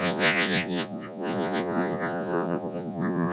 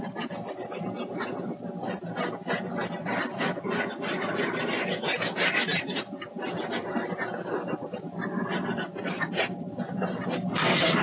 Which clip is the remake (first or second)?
first